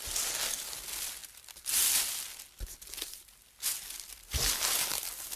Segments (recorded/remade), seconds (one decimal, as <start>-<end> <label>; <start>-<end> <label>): 0.0-5.4 recorded